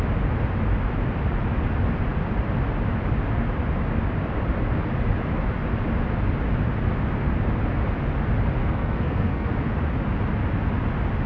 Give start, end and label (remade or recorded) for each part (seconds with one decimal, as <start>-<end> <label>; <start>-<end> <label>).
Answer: 0.0-8.6 recorded; 8.6-9.5 remade; 9.5-11.3 recorded